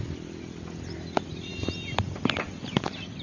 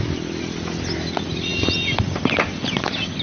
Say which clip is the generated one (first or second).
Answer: first